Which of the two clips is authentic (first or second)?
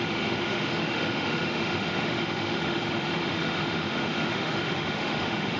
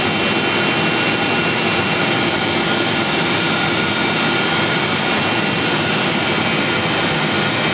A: second